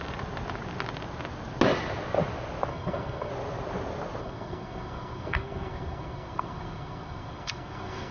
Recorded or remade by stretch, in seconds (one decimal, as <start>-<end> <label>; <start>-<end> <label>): 0.0-2.7 recorded; 2.7-3.3 remade; 3.3-4.2 recorded; 4.2-8.1 remade